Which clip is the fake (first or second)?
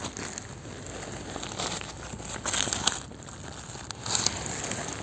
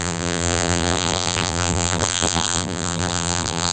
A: second